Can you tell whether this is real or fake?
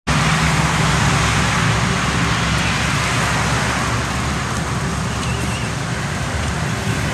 real